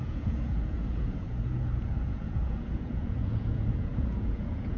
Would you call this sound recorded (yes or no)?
no